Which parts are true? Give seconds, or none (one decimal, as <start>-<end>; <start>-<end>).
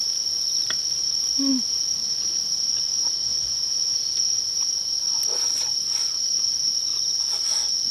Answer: 3.3-4.6; 6.9-7.9